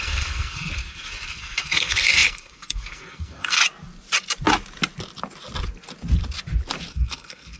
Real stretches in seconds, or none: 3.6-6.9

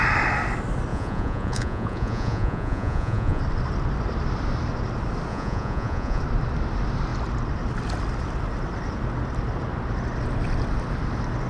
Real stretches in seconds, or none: 0.0-0.9; 3.4-5.3; 6.2-11.5

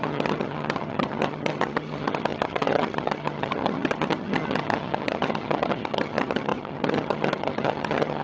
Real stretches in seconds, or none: none

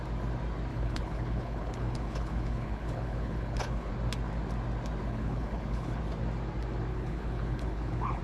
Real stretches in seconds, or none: 0.0-0.7; 3.9-5.0; 6.0-6.9

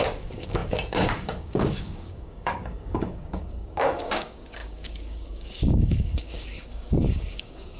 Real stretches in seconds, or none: none

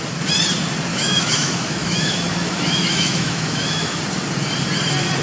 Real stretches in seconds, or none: 0.0-0.9; 4.0-5.2